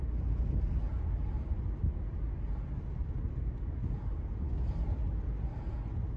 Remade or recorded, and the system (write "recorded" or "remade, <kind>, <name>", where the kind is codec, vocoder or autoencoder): recorded